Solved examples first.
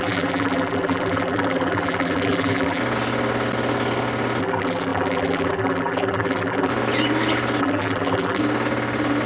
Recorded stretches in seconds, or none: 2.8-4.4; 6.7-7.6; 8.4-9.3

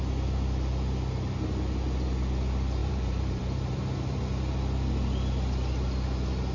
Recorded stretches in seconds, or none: 0.0-2.8; 4.2-6.5

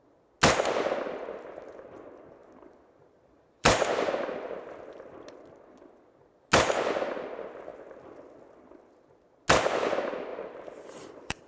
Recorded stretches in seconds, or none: 0.0-2.4; 4.8-10.3

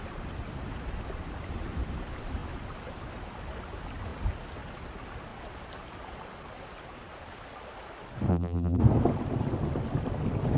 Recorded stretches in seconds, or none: 0.0-8.3; 8.8-10.6

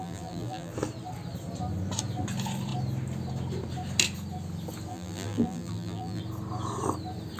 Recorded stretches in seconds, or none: 0.7-4.9; 6.2-7.4

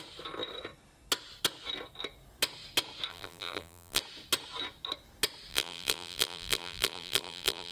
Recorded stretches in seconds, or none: 0.0-3.1; 4.0-5.5